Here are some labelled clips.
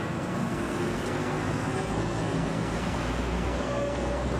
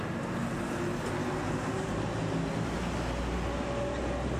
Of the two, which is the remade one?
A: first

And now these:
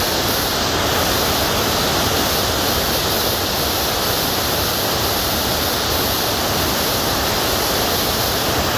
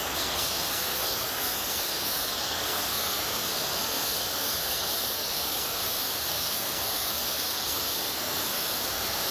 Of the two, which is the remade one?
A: second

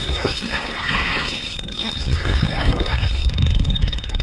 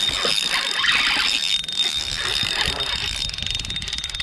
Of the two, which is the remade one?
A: first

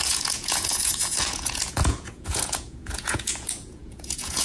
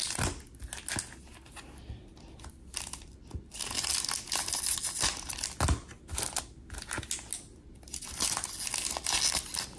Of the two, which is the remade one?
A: first